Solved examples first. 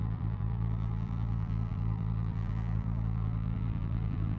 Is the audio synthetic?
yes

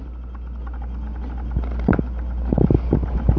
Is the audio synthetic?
no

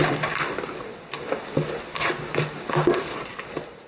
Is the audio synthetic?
no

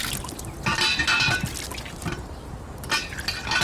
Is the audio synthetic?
no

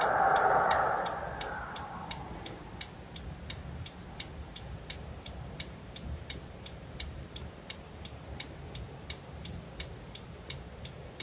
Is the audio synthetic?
yes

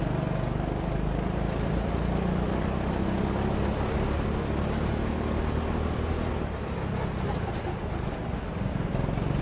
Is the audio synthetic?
no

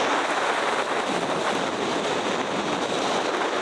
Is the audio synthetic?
no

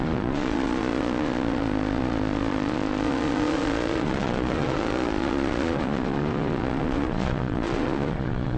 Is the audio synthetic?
yes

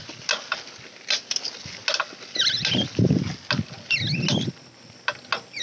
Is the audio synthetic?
no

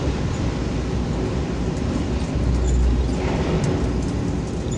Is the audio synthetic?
no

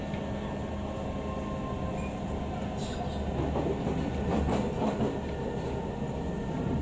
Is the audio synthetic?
no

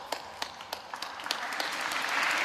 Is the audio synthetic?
no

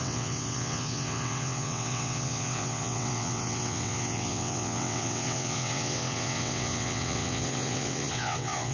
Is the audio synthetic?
yes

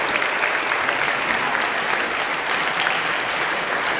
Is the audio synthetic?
no